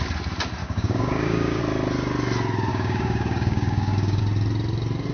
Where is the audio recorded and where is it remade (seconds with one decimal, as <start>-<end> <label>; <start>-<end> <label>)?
0.0-0.6 recorded; 0.6-1.6 remade; 1.6-2.7 recorded; 2.7-4.2 remade; 4.2-5.1 recorded